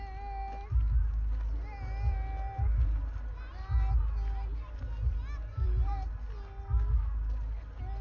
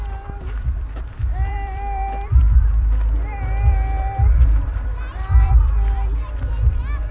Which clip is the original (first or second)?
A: first